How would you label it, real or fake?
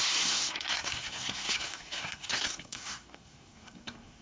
fake